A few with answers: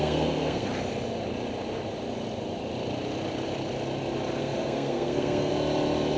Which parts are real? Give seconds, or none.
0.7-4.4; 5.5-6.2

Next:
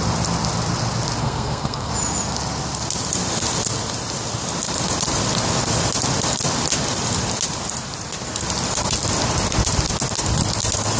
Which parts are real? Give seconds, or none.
0.0-1.2; 1.9-11.0

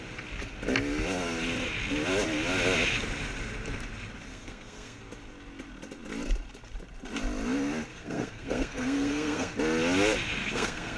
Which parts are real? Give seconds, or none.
0.0-4.3; 5.0-7.9; 9.5-10.4

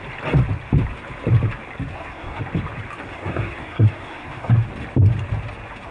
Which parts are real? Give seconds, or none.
0.0-1.9; 2.4-3.1; 4.5-5.9